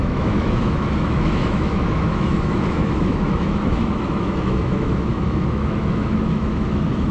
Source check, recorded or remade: remade